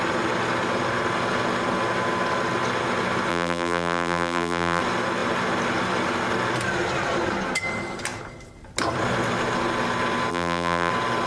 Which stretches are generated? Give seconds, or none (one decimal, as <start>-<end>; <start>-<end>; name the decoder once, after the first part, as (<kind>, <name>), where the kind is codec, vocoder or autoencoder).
3.3-4.8 (vocoder, BigVGAN v2); 10.3-10.9